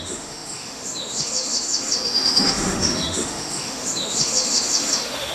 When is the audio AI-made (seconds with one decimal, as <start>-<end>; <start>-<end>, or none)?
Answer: 0.0-5.3